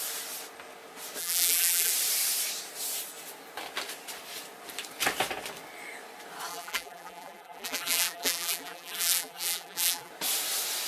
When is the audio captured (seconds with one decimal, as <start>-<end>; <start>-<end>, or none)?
0.0-1.2; 1.9-6.5; 10.1-10.9

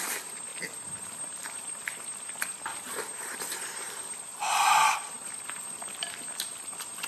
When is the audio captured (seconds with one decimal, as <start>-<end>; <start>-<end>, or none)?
0.0-7.1

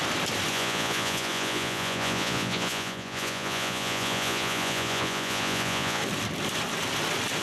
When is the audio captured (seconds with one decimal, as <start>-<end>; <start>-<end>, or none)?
0.0-0.5; 6.0-7.4

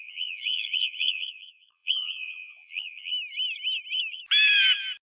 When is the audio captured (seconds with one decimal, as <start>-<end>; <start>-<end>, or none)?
3.1-5.1